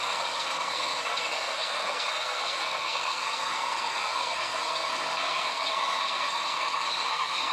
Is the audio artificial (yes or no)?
yes